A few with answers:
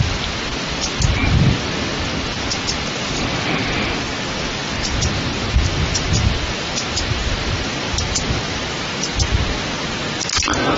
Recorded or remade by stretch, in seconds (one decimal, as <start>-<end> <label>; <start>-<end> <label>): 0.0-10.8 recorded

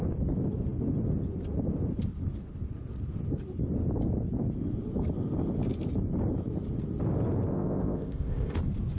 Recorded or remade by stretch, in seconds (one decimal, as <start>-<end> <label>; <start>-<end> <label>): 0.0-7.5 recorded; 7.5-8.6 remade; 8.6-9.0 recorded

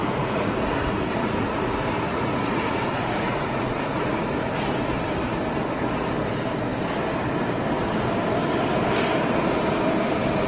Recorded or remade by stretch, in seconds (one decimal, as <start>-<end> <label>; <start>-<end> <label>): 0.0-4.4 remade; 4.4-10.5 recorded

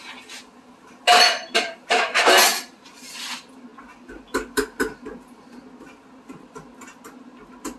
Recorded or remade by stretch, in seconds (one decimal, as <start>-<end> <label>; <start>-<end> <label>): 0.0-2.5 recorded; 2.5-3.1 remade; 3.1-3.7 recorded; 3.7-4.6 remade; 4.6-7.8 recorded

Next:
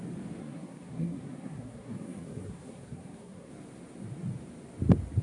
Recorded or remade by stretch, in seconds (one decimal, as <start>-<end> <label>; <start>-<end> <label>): 0.0-0.4 recorded; 0.4-3.5 remade; 3.5-5.2 recorded

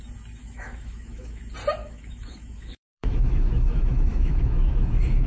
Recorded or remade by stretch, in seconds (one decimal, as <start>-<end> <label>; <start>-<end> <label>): 0.0-0.4 recorded; 0.4-1.4 remade; 1.4-1.8 recorded; 1.8-5.3 remade

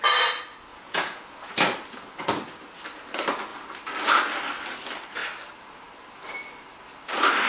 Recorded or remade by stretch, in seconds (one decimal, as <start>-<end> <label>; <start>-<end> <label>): 0.0-0.7 recorded; 0.7-1.3 remade; 1.3-7.5 recorded

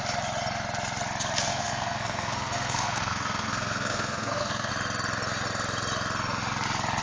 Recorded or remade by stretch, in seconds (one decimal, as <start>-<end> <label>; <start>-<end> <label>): 0.0-1.5 recorded; 1.5-4.7 remade; 4.7-7.0 recorded